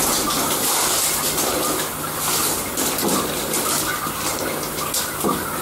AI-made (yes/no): no